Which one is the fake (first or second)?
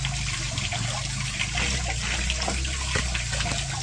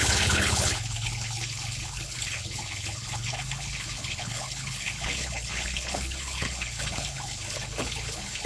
second